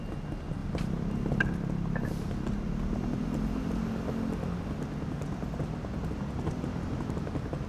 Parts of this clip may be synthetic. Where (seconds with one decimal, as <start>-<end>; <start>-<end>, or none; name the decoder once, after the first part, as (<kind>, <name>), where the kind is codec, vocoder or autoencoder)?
none